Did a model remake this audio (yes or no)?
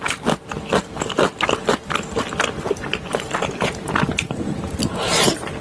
no